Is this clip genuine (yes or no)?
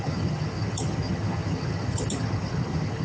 no